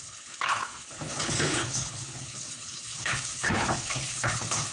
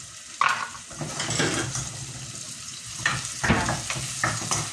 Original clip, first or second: second